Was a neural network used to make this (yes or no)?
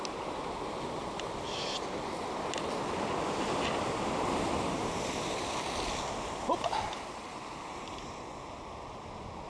no